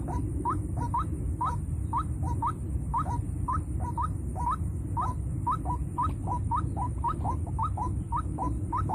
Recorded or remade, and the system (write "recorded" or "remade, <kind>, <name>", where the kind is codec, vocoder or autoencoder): recorded